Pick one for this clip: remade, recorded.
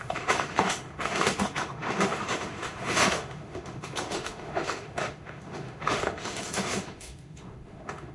remade